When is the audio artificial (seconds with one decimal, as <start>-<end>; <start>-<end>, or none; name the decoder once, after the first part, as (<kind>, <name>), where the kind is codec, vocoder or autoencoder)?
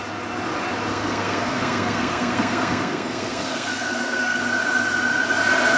0.9-4.4 (codec, SNAC)